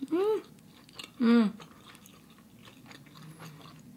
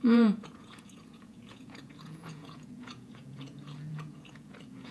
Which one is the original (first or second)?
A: first